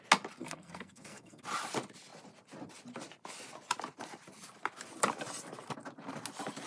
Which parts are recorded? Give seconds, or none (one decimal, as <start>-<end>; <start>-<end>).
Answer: 0.0-0.4; 1.4-6.7